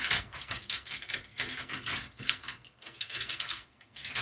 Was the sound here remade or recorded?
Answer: remade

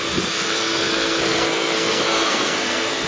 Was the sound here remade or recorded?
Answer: remade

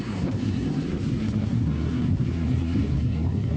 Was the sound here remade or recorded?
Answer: remade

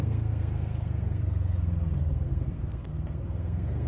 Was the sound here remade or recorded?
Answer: remade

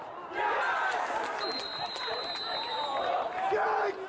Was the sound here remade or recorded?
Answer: recorded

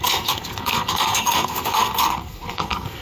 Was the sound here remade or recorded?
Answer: remade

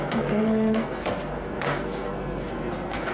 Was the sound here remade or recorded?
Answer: remade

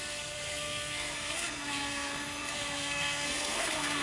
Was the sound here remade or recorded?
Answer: remade